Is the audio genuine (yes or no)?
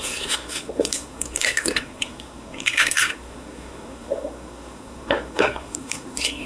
no